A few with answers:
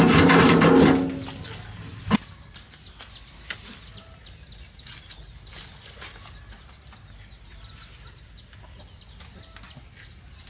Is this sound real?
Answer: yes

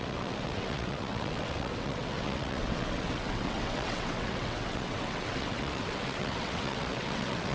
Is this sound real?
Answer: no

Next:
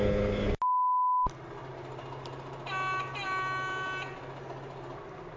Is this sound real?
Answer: yes